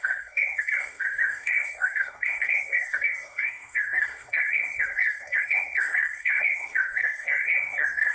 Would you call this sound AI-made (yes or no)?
yes